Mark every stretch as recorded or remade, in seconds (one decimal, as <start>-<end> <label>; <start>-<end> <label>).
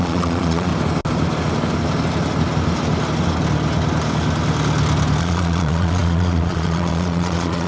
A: 0.0-0.7 remade; 0.7-5.2 recorded; 5.2-7.7 remade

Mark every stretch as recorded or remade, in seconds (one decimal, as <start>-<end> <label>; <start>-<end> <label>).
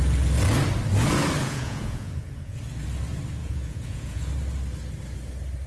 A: 0.0-1.4 recorded; 1.4-2.6 remade; 2.6-3.4 recorded; 3.4-4.3 remade; 4.3-5.7 recorded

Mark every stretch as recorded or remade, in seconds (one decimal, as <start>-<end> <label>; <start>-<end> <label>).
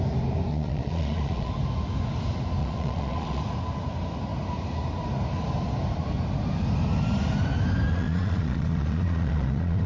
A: 0.0-0.5 recorded; 0.5-1.5 remade; 1.5-2.6 recorded; 2.6-3.4 remade; 3.4-7.9 recorded; 7.9-9.9 remade